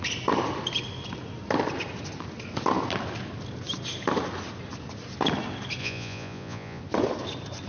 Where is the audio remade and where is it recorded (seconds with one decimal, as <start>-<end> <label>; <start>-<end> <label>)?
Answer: 0.0-5.8 recorded; 5.8-6.8 remade; 6.8-7.7 recorded